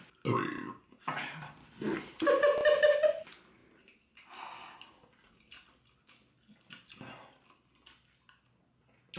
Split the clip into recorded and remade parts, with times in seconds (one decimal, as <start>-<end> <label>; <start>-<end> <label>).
0.0-9.2 recorded